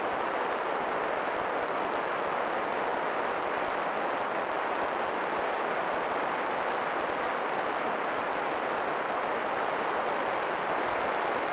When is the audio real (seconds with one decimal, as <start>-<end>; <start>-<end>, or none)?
0.0-11.5